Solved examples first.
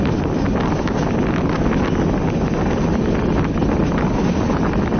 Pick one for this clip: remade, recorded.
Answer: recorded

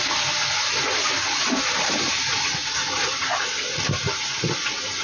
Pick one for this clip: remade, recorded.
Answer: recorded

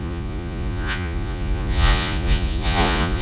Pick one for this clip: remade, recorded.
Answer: remade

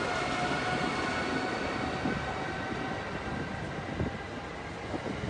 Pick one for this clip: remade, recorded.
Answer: recorded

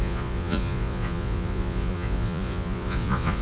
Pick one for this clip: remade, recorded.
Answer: remade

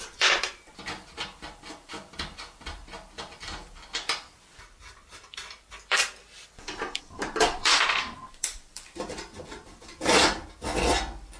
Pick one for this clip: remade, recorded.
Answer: remade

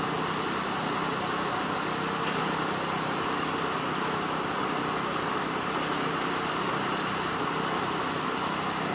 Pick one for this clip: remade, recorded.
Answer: recorded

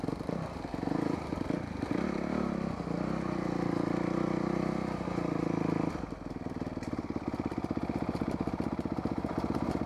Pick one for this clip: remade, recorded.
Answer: recorded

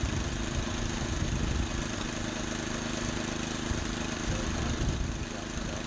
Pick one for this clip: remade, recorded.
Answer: recorded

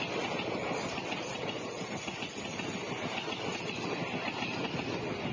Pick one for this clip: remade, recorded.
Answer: recorded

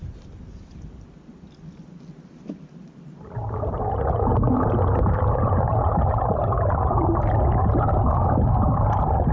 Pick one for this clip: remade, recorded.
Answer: recorded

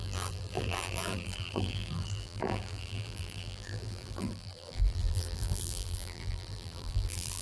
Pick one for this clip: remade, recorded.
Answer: remade